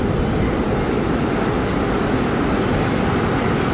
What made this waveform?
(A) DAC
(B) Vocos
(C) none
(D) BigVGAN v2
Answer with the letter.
C